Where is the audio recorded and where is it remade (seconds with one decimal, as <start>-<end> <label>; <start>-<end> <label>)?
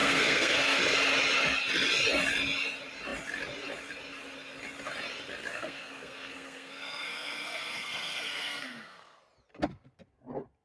0.0-0.8 remade; 0.8-5.5 recorded; 5.5-9.2 remade; 9.2-10.6 recorded